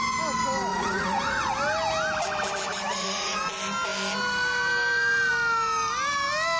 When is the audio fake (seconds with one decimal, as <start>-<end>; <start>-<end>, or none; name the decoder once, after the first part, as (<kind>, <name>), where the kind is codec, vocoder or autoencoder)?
0.7-1.5 (vocoder, Vocos); 2.7-3.4